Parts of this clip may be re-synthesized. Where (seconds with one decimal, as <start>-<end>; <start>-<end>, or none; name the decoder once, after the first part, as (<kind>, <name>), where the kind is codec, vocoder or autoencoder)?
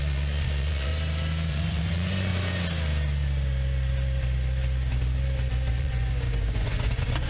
0.0-0.9 (vocoder, Vocos); 1.5-2.3; 5.7-7.3